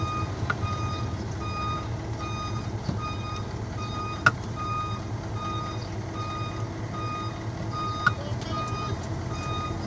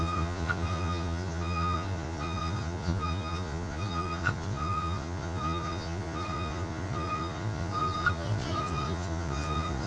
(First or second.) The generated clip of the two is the second